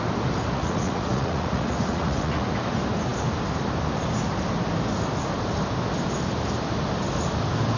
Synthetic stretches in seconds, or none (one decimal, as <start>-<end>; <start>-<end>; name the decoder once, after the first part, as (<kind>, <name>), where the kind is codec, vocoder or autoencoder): 0.5-2.5 (vocoder, Vocos)